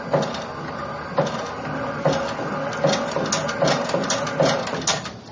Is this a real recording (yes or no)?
yes